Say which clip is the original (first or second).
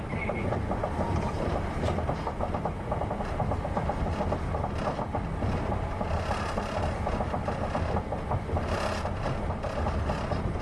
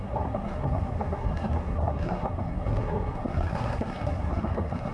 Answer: first